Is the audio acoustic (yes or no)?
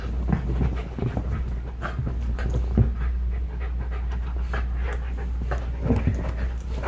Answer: yes